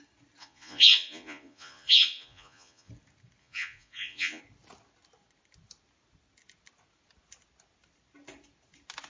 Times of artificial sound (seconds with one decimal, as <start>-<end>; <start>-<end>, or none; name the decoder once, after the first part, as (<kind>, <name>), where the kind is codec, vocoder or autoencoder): 0.4-2.9 (vocoder, Vocos); 3.4-4.4